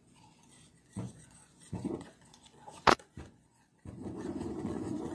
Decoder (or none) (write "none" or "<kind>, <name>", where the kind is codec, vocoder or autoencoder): vocoder, Vocos